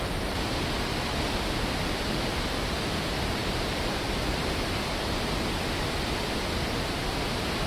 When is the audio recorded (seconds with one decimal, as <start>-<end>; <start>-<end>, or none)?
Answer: 0.0-3.4; 5.5-7.7